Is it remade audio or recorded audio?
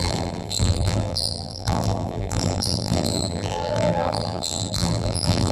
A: remade